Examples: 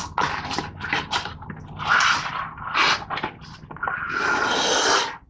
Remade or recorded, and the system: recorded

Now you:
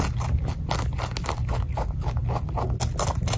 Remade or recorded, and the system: recorded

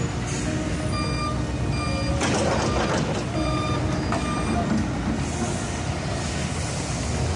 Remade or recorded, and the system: recorded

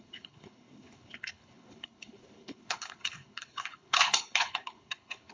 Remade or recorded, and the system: remade, codec, HILCodec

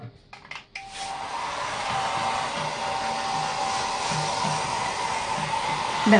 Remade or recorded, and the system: recorded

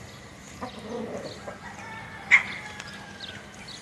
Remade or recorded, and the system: recorded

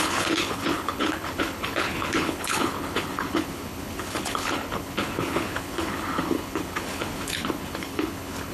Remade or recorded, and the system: remade, codec, HILCodec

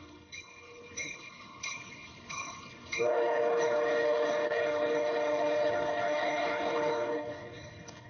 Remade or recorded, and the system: remade, codec, HILCodec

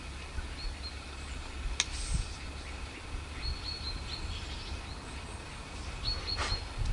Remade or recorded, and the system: recorded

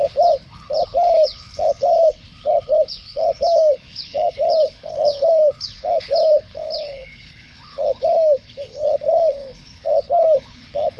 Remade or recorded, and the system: remade, codec, HILCodec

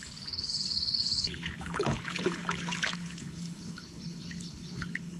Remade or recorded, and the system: remade, codec, HILCodec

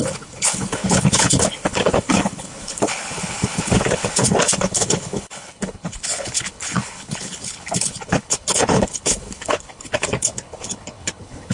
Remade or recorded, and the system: remade, codec, HILCodec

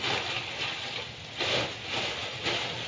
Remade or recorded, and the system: recorded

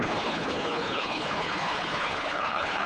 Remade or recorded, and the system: remade, codec, HILCodec